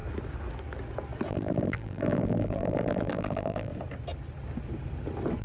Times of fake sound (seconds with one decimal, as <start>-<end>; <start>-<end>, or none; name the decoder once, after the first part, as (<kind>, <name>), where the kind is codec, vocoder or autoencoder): 1.3-3.7 (vocoder, BigVGAN v2)